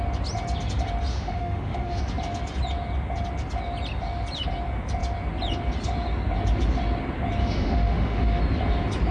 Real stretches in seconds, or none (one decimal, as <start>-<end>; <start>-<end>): 0.0-1.1; 2.0-7.4; 8.4-9.1